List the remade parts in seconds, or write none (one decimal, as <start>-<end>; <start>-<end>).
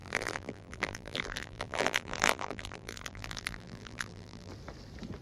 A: 0.0-4.5